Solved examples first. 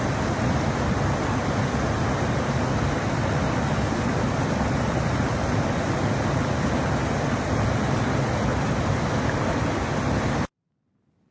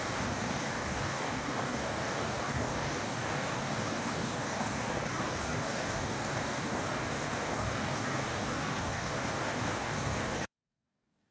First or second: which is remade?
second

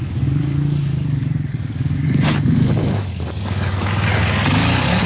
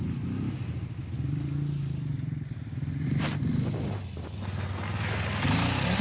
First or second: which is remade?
first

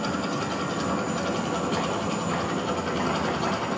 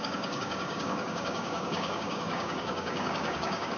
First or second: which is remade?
second